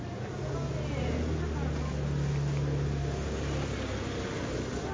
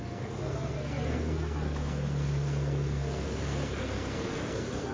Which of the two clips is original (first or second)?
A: first